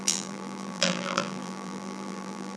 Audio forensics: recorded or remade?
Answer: remade